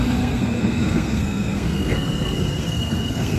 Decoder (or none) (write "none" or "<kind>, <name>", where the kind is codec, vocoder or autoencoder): codec, SNAC